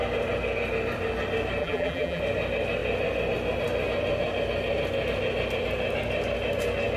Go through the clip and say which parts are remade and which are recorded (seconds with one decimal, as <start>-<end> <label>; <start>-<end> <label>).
0.0-1.6 recorded; 1.6-2.2 remade; 2.2-7.0 recorded